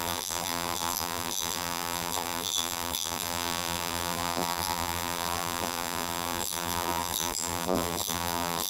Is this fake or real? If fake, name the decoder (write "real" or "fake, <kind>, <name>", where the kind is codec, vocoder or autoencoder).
fake, vocoder, BigVGAN v2